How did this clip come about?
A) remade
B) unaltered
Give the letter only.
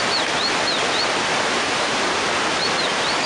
B